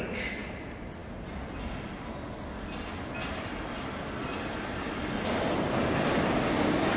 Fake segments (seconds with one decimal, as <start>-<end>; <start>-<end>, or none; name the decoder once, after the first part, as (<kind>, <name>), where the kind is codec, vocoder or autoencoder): none